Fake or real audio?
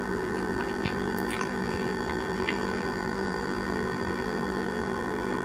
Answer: fake